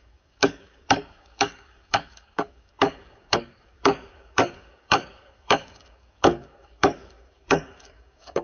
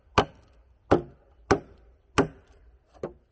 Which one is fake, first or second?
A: first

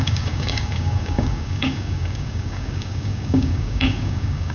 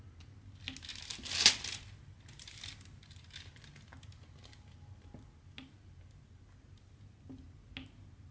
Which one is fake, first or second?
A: first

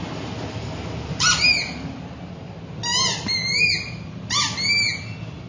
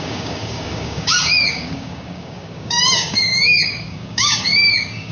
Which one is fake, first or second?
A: second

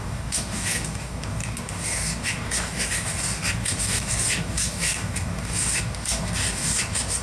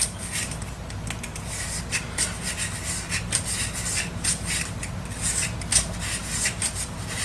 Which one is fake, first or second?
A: first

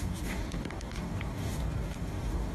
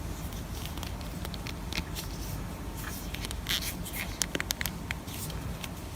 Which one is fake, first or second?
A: first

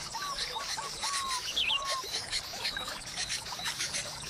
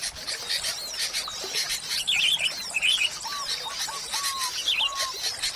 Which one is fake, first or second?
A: first